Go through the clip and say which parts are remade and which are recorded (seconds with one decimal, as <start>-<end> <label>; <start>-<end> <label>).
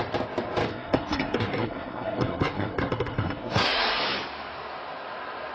0.0-0.7 recorded; 0.7-4.0 remade; 4.0-5.5 recorded